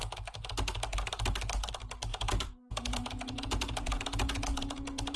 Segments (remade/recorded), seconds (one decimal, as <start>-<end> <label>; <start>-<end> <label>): 0.0-2.1 recorded; 2.1-5.2 remade